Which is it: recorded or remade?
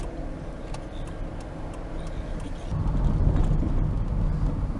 recorded